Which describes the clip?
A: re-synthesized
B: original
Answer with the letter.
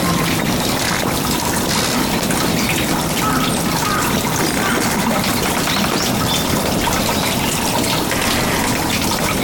B